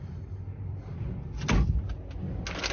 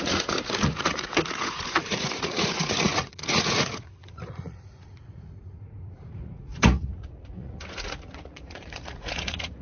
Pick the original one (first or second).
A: first